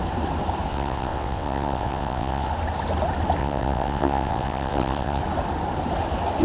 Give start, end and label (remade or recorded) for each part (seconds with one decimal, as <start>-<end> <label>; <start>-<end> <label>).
0.0-0.7 recorded; 0.7-2.5 remade; 2.5-3.4 recorded; 3.4-5.2 remade; 5.2-6.4 recorded